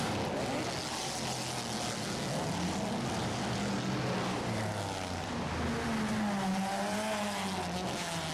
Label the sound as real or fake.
real